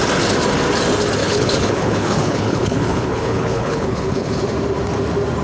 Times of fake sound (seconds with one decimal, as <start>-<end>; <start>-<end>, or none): 1.2-4.4